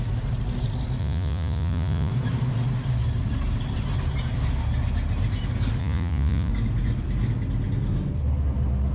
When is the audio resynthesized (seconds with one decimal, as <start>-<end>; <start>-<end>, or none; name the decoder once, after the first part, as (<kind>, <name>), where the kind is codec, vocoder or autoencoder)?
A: 1.0-2.1 (vocoder, Vocos); 5.8-6.5